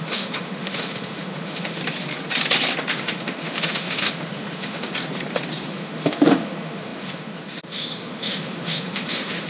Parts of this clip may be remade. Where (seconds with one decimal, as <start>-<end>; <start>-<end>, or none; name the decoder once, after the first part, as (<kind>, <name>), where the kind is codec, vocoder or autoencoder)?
0.0-1.8 (autoencoder, DAC-VAE); 3.0-4.9; 5.7-9.5